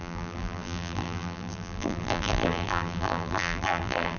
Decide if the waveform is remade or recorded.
remade